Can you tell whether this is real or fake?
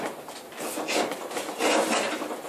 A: real